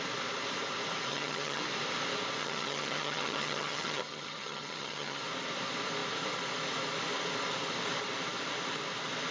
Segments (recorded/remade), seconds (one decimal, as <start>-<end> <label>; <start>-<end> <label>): 0.0-1.1 recorded; 1.1-1.6 remade; 1.6-2.4 recorded; 2.4-5.2 remade; 5.2-9.3 recorded